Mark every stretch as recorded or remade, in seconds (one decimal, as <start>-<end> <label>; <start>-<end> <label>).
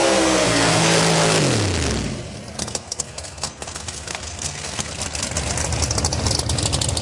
0.0-1.0 remade; 1.0-2.6 recorded; 2.6-4.9 remade; 4.9-7.0 recorded